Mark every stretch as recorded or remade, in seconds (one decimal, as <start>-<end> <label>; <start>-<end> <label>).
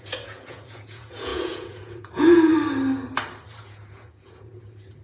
0.0-2.5 remade; 2.5-3.6 recorded; 3.6-5.0 remade